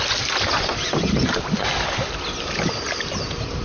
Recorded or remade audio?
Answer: recorded